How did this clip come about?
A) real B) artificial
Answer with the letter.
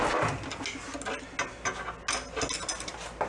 A